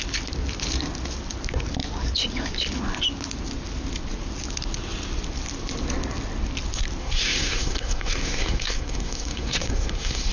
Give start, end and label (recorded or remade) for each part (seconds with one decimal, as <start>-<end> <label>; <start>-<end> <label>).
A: 0.0-7.0 recorded; 7.0-10.3 remade